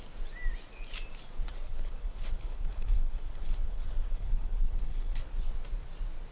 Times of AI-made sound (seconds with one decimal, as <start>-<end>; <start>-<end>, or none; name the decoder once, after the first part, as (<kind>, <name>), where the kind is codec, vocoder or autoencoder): 1.5-5.3 (codec, HILCodec)